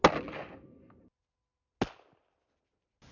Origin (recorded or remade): recorded